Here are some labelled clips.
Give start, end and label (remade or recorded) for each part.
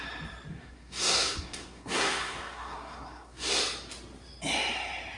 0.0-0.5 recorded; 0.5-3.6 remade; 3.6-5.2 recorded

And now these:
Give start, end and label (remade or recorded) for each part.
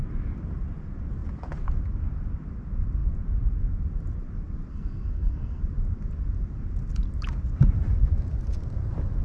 0.0-4.7 recorded; 4.7-5.6 remade; 5.6-9.2 recorded